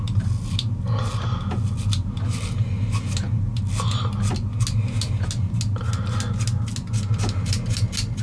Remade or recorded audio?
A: recorded